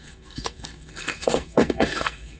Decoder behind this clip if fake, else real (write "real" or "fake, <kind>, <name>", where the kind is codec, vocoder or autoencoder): fake, codec, SNAC